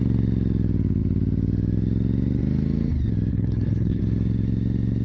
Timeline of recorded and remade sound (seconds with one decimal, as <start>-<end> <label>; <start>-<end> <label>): 0.0-3.3 recorded; 3.3-4.0 remade; 4.0-5.0 recorded